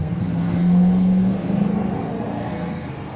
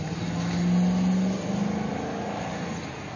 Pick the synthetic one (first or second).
first